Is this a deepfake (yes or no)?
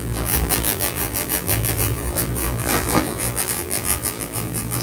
yes